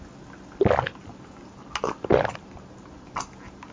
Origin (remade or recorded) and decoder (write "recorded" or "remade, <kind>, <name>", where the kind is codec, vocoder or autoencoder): recorded